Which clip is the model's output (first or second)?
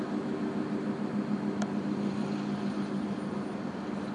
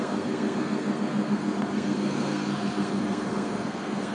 second